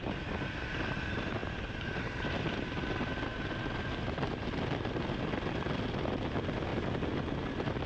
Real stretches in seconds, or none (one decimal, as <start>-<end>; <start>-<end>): 0.0-1.4; 5.7-7.9